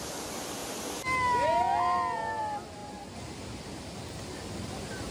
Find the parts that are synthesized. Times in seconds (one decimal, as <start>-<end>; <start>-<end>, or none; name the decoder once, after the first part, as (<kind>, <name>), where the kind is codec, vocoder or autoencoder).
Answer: none